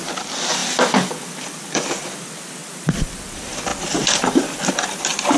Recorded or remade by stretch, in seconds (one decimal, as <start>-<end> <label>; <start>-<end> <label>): 0.0-5.4 recorded